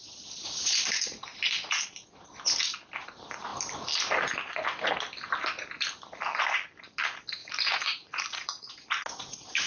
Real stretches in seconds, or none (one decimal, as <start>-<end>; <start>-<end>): 0.0-7.4; 8.7-9.7